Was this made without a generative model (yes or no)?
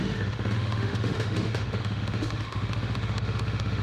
no